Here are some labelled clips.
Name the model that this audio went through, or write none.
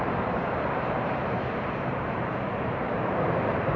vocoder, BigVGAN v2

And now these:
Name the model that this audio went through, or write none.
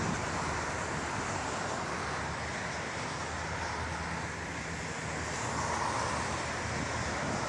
none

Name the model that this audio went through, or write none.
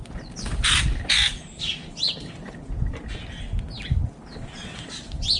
none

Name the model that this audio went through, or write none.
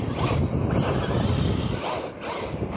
none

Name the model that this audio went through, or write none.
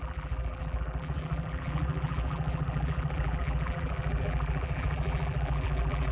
vocoder, BigVGAN v2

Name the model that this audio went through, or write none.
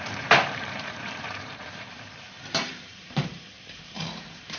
vocoder, BigVGAN v2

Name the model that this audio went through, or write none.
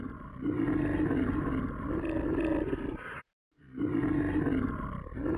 none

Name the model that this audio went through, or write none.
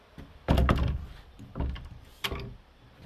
none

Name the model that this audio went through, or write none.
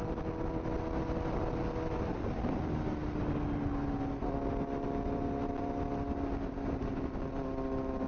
none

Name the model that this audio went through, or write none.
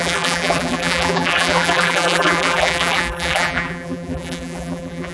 vocoder, BigVGAN v2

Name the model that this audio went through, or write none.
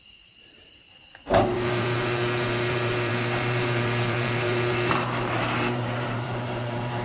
vocoder, BigVGAN v2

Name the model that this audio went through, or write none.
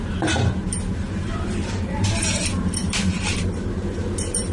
vocoder, BigVGAN v2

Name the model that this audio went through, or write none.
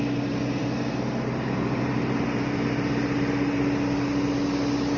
vocoder, BigVGAN v2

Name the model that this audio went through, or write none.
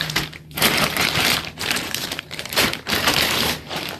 vocoder, BigVGAN v2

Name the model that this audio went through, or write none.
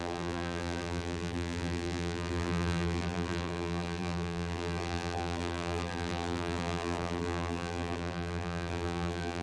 vocoder, BigVGAN v2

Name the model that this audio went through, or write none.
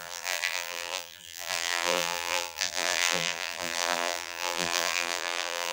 vocoder, BigVGAN v2